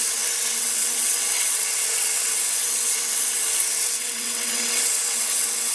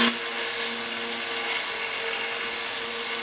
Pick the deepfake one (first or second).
first